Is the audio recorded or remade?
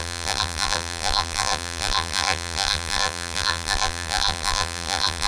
remade